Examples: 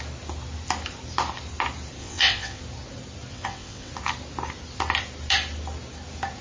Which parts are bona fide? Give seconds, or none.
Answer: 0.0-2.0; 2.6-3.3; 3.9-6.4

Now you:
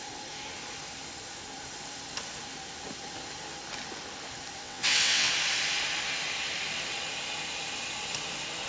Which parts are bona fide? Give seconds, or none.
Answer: 0.0-4.6; 5.3-8.7

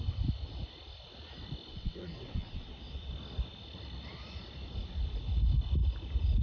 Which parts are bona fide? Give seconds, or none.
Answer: 0.0-1.7; 3.1-6.4

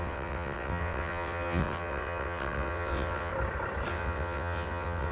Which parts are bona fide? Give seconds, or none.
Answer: 3.3-3.9